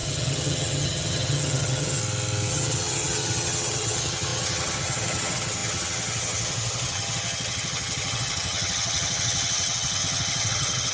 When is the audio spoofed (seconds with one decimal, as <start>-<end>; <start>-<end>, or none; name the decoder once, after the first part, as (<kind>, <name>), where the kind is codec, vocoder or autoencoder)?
0.0-2.0 (vocoder, HiFi-GAN); 2.5-10.9

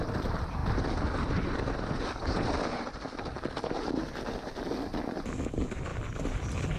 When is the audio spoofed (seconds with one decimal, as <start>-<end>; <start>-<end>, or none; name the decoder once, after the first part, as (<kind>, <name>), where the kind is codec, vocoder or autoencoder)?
none

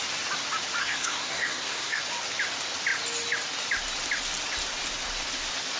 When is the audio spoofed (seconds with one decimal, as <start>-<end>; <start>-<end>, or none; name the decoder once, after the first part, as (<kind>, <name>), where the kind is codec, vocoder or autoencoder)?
0.8-2.0 (codec, SNAC)

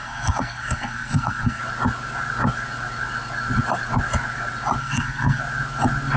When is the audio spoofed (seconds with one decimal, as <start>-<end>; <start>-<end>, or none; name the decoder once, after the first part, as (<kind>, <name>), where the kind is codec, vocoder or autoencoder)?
0.0-1.6 (codec, SNAC); 4.8-5.4

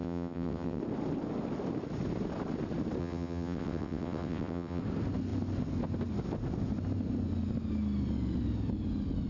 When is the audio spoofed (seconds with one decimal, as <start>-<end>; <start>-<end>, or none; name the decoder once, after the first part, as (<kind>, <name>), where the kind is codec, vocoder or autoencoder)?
0.0-0.8 (vocoder, WaveNeXt); 3.0-4.8

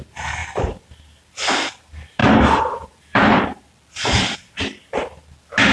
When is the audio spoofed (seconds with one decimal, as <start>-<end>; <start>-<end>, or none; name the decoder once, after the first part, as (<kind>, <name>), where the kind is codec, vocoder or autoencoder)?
2.2-3.7 (vocoder, BigVGAN v2)

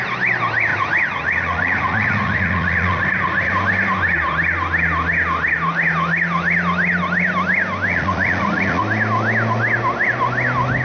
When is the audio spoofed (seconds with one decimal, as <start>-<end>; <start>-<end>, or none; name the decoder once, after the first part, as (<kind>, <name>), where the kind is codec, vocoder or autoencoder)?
0.7-3.5 (vocoder, Vocos); 7.9-8.8